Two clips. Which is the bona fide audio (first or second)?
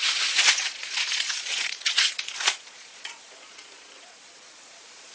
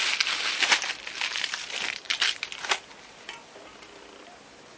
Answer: second